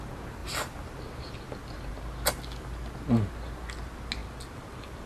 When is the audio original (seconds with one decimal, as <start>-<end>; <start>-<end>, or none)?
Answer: 0.0-5.1